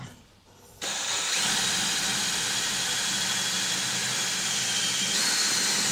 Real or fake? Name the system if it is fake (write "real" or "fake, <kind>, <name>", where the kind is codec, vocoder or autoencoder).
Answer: real